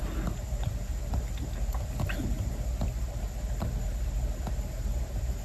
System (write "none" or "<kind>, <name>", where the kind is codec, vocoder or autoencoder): none